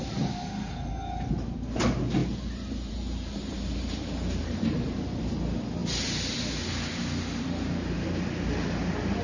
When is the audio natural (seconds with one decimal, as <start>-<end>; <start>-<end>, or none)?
0.0-2.2; 5.3-9.2